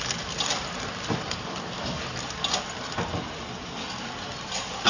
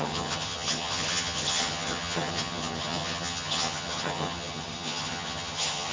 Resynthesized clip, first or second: second